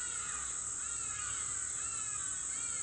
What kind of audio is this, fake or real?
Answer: real